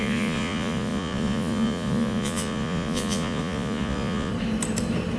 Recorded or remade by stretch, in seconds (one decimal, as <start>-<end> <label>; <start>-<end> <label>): 0.0-4.3 remade; 4.3-5.2 recorded